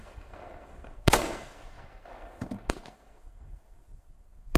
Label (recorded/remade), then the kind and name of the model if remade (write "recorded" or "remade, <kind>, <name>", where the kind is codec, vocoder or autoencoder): remade, codec, SNAC